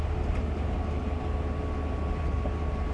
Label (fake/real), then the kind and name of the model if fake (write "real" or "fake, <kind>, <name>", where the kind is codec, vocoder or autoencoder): real